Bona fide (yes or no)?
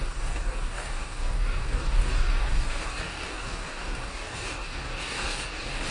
no